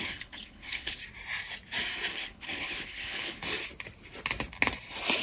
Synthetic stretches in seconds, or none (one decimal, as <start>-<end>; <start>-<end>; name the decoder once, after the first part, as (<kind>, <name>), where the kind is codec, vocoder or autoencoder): 0.0-1.0 (codec, HILCodec); 2.1-3.4